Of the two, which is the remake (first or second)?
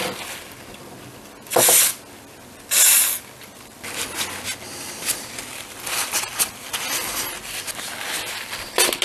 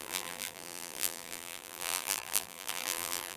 second